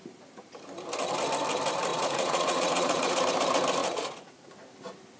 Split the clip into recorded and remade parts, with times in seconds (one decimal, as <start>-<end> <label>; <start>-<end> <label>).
0.0-1.9 recorded; 1.9-3.2 remade; 3.2-3.8 recorded; 3.8-4.5 remade; 4.5-5.2 recorded